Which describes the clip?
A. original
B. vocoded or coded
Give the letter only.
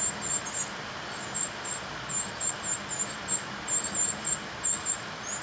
A